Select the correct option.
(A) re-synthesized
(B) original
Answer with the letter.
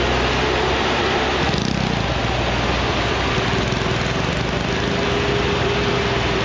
B